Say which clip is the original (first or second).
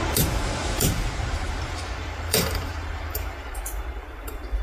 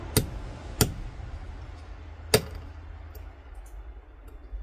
second